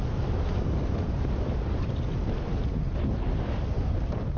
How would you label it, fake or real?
real